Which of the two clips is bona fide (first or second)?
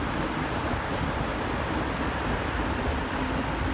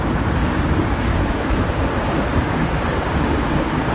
first